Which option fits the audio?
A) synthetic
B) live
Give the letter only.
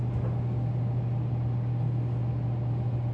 B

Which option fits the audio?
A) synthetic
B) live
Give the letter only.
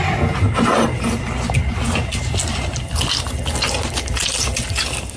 B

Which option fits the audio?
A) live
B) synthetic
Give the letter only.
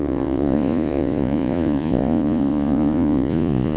B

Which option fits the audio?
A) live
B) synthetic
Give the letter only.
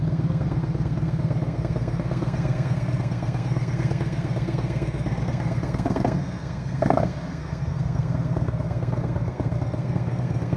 B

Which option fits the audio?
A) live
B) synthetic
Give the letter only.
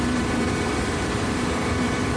B